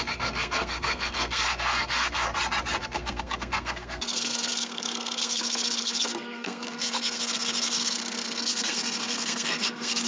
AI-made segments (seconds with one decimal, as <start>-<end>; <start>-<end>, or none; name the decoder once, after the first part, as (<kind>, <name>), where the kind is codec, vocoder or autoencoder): 0.0-2.3 (codec, SNAC); 2.8-10.1